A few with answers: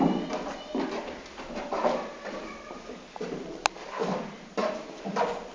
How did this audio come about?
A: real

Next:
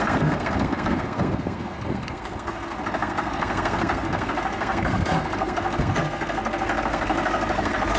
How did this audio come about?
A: fake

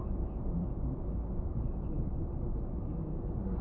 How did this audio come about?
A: real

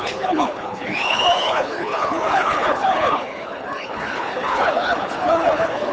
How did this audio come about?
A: fake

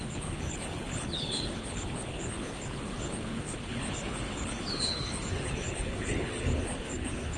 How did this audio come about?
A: fake